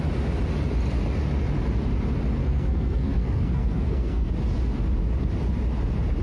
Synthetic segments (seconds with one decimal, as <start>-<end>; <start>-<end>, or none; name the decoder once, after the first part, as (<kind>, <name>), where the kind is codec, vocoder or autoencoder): 2.4-4.3 (codec, SNAC)